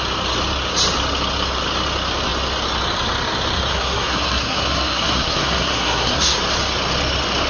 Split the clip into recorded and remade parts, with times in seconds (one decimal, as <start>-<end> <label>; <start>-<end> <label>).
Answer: 0.0-3.7 recorded; 3.7-6.4 remade; 6.4-7.5 recorded